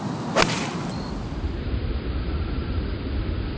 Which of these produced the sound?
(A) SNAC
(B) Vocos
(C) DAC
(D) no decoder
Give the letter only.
D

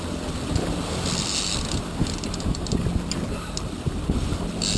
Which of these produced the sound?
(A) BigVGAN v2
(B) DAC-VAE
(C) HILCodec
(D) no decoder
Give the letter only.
D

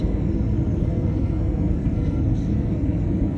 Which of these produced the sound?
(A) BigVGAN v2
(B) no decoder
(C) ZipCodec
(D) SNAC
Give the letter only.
D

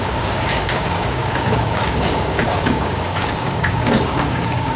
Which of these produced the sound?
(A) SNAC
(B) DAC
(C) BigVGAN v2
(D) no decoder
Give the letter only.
B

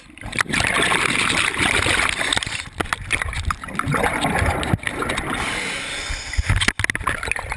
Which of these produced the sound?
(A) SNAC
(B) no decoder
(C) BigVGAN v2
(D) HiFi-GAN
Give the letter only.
B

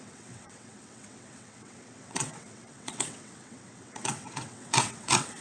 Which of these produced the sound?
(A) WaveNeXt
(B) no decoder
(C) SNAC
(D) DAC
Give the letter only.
A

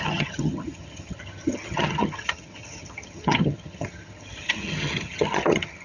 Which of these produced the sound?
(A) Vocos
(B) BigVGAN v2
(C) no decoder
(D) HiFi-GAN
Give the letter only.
D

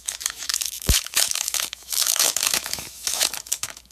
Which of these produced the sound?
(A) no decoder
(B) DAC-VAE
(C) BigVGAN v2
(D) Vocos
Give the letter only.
B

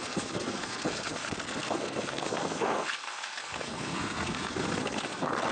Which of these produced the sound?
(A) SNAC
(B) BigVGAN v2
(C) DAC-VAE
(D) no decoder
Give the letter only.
A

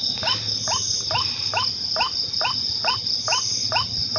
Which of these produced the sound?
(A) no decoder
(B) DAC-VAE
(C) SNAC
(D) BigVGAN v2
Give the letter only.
D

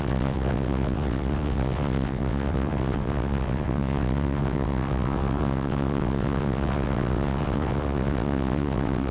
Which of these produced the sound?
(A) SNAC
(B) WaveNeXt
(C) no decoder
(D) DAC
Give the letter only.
B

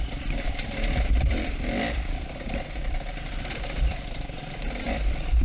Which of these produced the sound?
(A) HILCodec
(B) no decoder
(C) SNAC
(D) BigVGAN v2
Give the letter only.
D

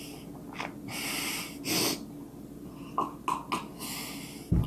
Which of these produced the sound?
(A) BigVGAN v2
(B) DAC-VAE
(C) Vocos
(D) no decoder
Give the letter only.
D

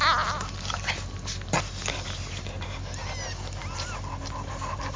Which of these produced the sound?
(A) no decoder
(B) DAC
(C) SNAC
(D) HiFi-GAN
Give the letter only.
A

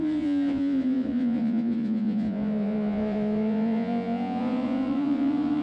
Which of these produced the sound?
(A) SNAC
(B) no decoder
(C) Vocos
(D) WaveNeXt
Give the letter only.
C